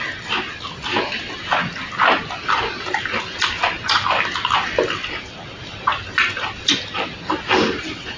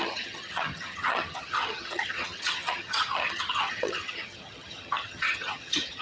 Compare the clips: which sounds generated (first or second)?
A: second